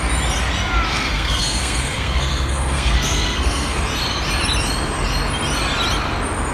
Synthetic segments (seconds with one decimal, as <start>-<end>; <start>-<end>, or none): 0.9-3.8